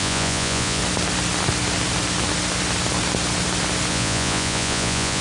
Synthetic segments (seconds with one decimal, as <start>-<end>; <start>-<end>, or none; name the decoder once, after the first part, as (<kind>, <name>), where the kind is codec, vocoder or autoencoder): 0.0-0.8 (vocoder, Vocos); 3.9-5.2